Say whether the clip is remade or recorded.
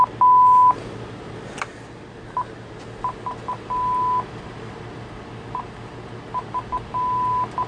recorded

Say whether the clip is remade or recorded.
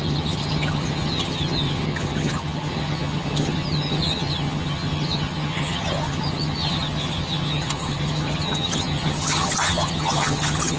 remade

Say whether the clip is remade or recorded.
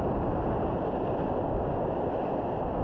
recorded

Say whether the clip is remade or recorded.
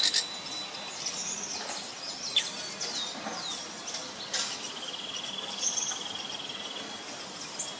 recorded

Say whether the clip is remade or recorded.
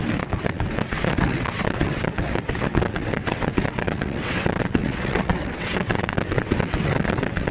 remade